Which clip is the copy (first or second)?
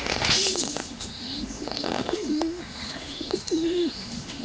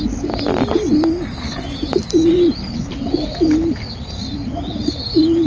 first